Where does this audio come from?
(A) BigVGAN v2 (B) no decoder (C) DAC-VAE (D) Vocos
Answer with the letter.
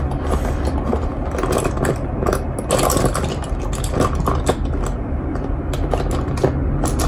B